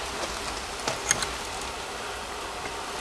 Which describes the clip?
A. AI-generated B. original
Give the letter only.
A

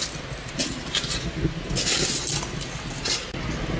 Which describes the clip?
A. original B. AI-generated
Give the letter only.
A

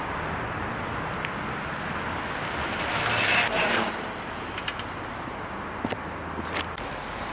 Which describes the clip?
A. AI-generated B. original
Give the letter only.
B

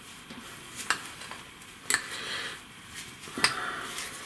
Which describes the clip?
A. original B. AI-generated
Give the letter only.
A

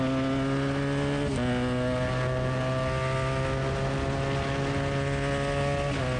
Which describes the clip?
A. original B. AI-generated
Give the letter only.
A